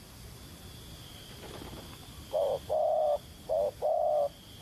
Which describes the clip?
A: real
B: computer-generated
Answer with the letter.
A